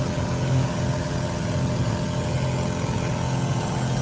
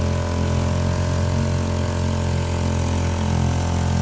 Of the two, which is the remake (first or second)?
first